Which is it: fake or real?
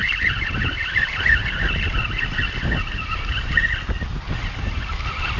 real